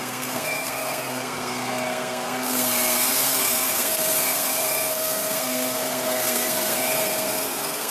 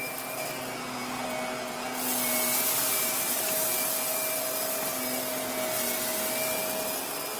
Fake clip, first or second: first